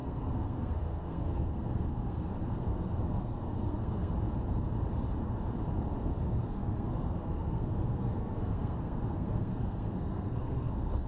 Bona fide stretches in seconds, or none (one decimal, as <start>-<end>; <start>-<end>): 2.3-2.7; 4.1-6.1